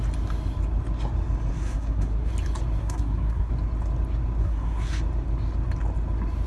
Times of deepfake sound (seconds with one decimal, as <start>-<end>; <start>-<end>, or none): 1.5-2.3; 2.8-3.5; 4.4-5.0